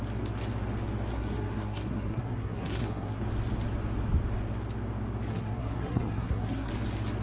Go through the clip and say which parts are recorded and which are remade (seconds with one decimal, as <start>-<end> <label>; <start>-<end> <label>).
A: 0.0-1.1 recorded; 1.1-3.2 remade; 3.2-5.3 recorded; 5.3-6.7 remade; 6.7-7.2 recorded